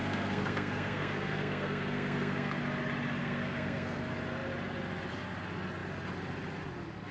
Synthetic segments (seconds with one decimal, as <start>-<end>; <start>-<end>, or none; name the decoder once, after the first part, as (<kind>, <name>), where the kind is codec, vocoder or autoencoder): 0.0-2.6 (codec, SNAC); 3.2-4.0